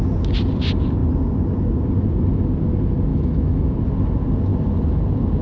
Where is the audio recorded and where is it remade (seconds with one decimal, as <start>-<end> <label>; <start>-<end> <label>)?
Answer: 0.0-3.1 recorded; 3.1-3.8 remade; 3.8-5.4 recorded